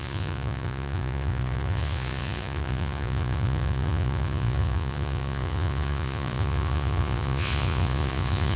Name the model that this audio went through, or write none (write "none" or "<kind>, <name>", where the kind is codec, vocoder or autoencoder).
vocoder, Vocos